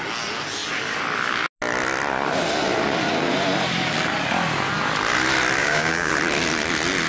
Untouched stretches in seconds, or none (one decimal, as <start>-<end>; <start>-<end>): 0.0-5.6; 6.1-7.1